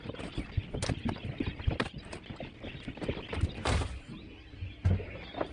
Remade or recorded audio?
recorded